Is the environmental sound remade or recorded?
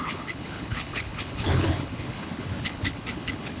remade